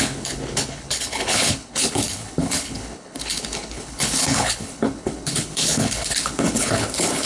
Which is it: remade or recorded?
remade